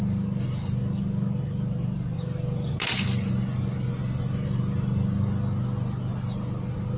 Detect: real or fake real